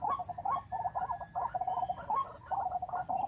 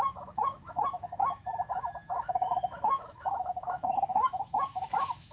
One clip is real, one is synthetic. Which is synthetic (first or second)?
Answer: second